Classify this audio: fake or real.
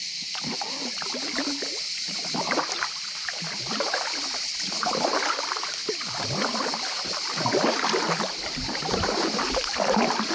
real